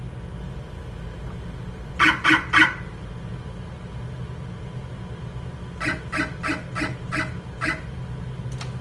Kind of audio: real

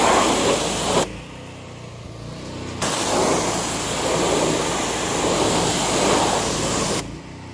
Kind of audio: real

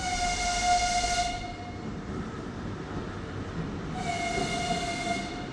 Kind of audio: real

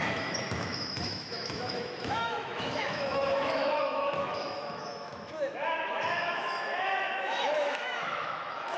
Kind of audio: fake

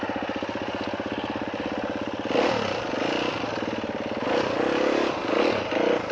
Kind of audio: real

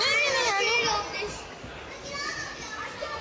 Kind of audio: real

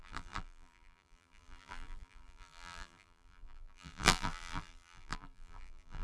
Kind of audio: fake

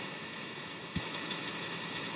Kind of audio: fake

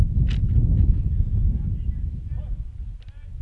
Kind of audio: real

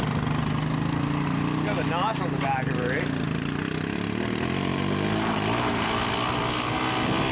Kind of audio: real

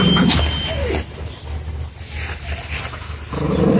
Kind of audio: real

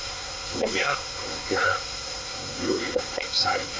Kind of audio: fake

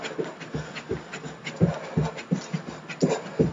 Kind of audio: real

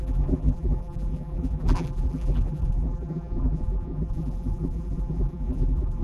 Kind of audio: fake